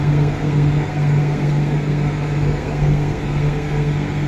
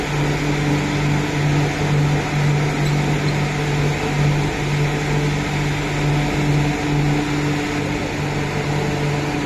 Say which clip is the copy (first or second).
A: first